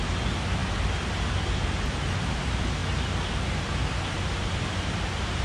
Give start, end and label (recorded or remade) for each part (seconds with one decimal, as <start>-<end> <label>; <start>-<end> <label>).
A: 0.0-5.4 recorded